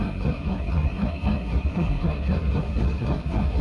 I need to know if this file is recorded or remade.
remade